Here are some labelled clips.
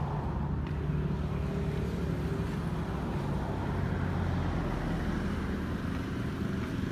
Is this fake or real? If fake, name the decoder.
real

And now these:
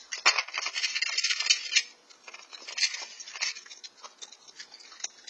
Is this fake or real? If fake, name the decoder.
real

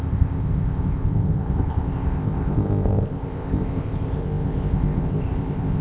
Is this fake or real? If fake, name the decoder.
fake, codec, ZipCodec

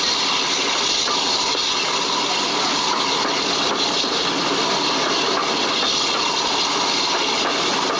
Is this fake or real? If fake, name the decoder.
real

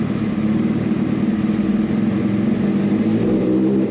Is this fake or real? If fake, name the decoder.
real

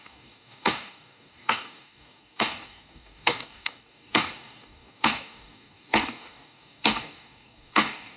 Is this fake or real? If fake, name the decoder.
fake, codec, DAC